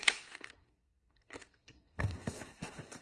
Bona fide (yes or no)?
no